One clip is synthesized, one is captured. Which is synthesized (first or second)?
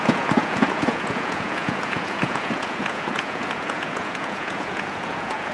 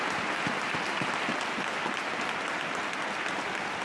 first